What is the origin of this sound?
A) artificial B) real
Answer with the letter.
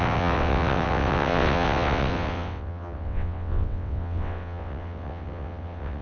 A